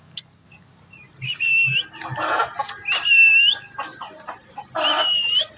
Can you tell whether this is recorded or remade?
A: recorded